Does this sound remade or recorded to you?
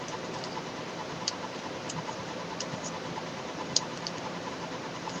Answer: remade